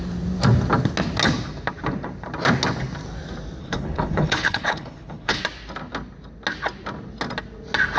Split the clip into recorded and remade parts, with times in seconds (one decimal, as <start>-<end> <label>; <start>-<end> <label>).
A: 0.0-3.6 recorded; 3.6-5.4 remade; 5.4-8.0 recorded